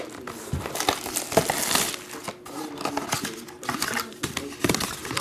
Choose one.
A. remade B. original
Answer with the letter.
B